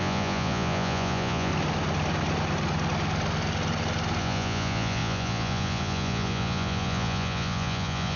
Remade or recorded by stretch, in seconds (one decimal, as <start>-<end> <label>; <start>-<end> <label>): 0.0-1.5 remade; 1.5-4.2 recorded; 4.2-8.2 remade